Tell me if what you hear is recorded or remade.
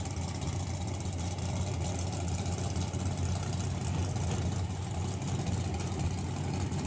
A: recorded